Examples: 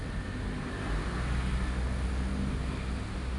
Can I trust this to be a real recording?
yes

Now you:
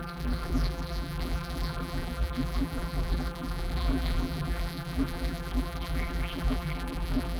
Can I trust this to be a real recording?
no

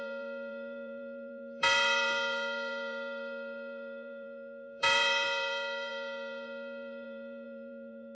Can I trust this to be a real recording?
no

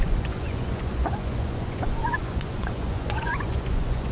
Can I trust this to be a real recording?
no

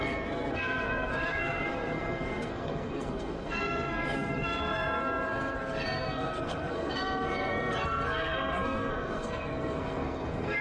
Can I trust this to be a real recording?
no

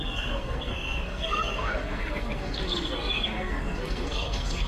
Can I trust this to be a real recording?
no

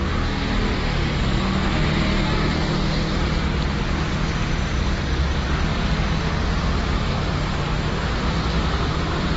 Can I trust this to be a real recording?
yes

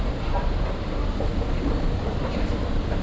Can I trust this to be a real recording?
yes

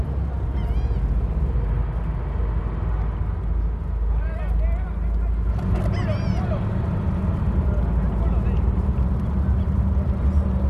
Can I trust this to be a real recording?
yes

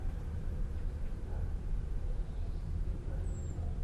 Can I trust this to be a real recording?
no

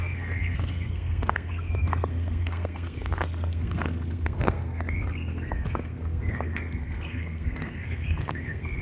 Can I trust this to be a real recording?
no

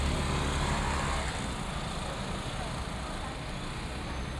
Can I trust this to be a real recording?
yes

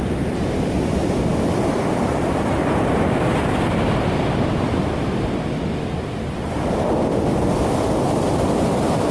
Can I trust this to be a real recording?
no